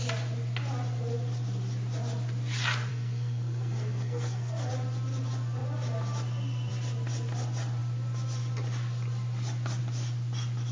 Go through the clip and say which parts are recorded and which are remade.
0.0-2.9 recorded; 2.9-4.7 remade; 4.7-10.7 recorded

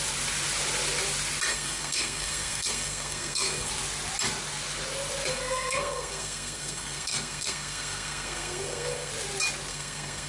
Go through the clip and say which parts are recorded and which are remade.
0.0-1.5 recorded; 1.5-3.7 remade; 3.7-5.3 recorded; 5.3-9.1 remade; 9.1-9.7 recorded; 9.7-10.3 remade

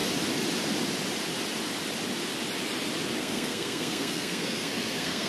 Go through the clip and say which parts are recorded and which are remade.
0.0-3.2 recorded; 3.2-5.3 remade